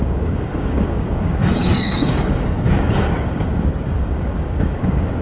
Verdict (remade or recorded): remade